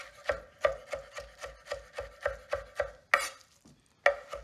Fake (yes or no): no